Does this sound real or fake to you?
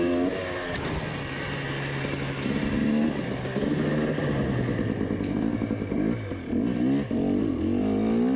real